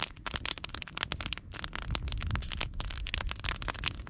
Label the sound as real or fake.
real